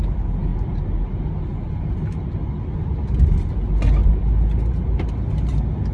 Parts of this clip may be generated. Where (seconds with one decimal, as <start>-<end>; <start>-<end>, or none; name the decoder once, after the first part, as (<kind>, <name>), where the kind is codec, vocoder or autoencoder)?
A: none